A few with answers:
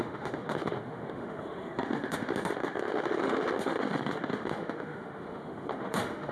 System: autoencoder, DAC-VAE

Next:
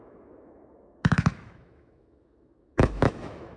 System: autoencoder, DAC-VAE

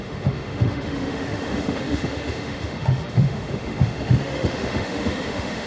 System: autoencoder, DAC-VAE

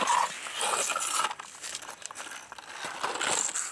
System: none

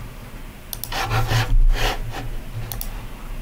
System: none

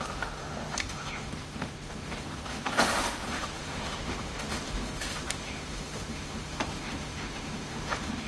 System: autoencoder, DAC-VAE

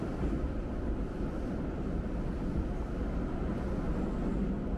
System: none